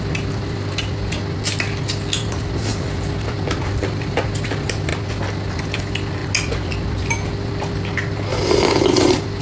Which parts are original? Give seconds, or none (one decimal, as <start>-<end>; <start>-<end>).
0.0-9.4